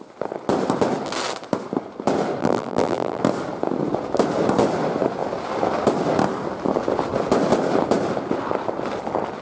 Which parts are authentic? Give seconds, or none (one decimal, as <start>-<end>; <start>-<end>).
0.0-2.4; 3.2-9.4